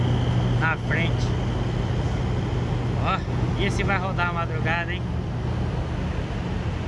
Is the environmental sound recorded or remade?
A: recorded